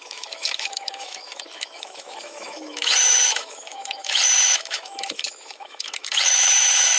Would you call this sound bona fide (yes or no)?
no